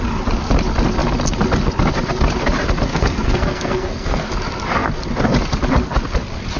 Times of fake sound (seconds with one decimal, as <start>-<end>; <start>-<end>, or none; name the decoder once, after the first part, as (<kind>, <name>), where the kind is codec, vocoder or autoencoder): 2.9-4.3 (codec, SNAC)